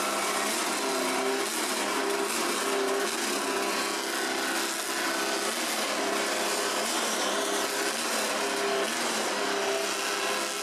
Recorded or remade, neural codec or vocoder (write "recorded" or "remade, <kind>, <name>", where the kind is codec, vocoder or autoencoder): recorded